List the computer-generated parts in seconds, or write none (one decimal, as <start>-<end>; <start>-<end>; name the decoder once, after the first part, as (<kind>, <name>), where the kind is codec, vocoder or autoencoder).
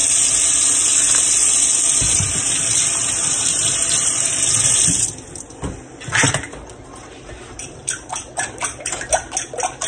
6.2-9.3 (vocoder, BigVGAN v2)